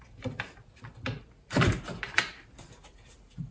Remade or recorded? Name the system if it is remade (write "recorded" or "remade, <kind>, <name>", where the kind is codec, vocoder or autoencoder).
recorded